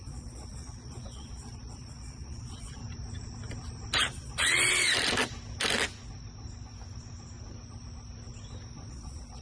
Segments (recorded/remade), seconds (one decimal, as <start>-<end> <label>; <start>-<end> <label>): 0.0-2.8 remade; 2.8-4.0 recorded; 4.0-4.6 remade; 4.6-8.9 recorded; 8.9-9.4 remade